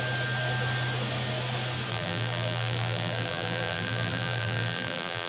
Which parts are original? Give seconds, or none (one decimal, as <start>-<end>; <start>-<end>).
0.0-1.9